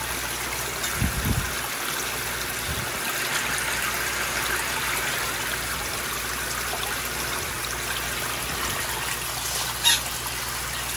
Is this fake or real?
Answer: real